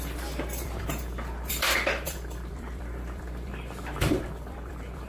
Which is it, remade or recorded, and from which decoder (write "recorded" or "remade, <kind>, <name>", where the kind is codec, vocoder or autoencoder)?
remade, vocoder, BigVGAN v2